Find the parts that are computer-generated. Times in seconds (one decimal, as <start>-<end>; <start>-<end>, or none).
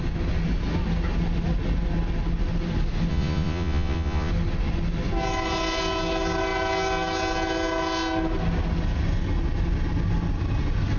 3.1-4.3